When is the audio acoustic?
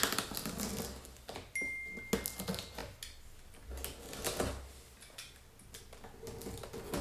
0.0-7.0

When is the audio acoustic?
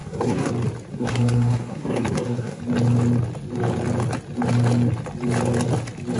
0.5-0.9; 2.6-6.2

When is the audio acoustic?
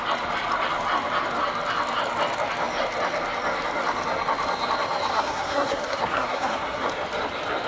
0.0-5.1; 6.9-7.7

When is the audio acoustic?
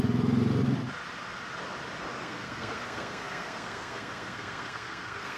0.0-2.2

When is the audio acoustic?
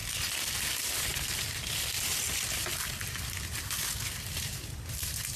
0.0-5.4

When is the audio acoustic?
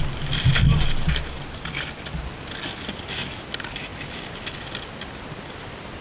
0.0-6.0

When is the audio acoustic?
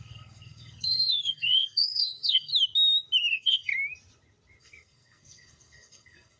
2.5-3.3; 3.7-4.6